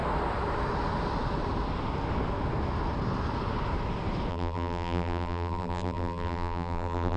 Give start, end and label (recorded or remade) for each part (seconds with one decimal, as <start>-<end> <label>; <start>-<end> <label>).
0.0-4.3 recorded; 4.3-7.2 remade